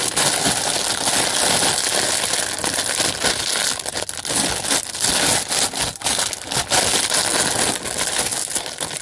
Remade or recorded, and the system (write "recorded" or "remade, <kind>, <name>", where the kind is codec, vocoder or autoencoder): recorded